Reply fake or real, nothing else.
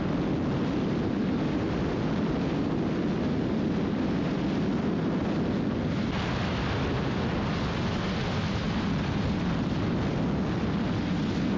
real